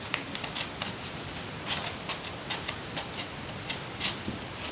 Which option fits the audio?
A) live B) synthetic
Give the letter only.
A